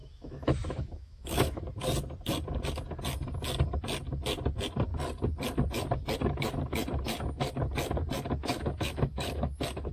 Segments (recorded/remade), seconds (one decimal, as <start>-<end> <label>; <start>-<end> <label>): 0.0-1.6 remade; 1.6-8.4 recorded; 8.4-9.4 remade; 9.4-9.9 recorded